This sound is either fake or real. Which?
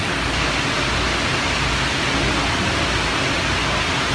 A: real